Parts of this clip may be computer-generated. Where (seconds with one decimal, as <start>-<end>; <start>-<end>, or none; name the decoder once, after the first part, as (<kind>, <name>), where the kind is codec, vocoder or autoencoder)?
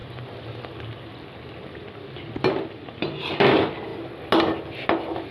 none